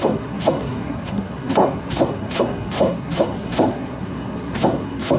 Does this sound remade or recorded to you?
remade